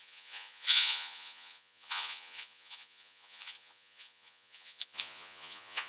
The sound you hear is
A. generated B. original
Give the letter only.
A